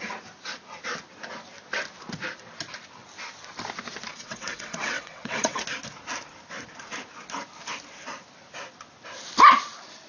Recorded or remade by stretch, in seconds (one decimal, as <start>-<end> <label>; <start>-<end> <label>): 0.0-4.1 recorded; 4.1-5.6 remade; 5.6-10.1 recorded